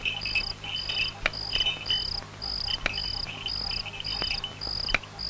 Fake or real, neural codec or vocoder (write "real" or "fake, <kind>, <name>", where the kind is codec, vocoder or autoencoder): real